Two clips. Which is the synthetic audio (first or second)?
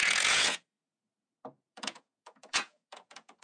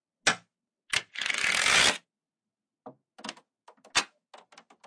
first